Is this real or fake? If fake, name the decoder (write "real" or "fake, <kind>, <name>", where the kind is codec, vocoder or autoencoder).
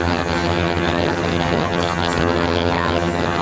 fake, vocoder, HiFi-GAN